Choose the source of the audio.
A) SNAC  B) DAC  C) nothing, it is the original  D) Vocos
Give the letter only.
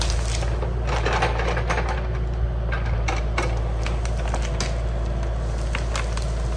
C